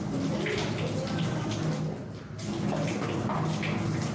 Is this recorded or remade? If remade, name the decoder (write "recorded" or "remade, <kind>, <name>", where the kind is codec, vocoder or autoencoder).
recorded